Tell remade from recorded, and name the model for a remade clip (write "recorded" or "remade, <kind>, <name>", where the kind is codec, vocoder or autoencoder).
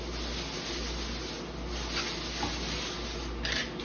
recorded